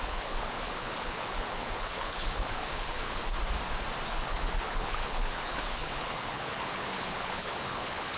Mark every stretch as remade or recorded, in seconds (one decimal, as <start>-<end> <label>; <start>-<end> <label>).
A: 0.0-3.2 remade; 3.2-4.1 recorded; 4.1-8.2 remade